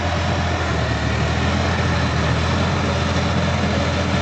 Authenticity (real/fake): real